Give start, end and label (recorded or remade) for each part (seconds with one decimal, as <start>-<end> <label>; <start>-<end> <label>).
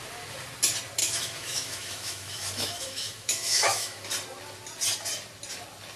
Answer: 0.0-1.0 recorded; 1.0-4.0 remade; 4.0-6.0 recorded